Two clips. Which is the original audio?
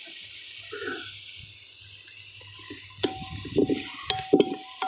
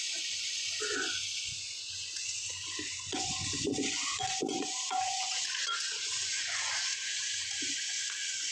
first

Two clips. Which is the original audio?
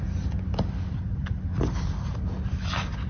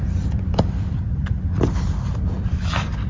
first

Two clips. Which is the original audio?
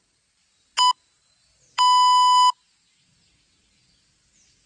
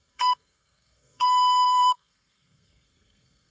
first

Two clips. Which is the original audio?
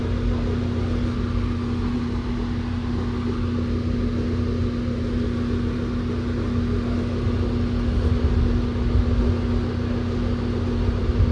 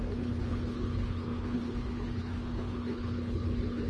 first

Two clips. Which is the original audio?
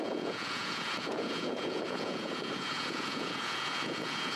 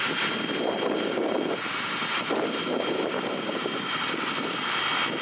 second